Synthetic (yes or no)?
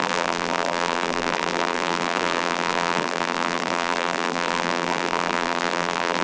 yes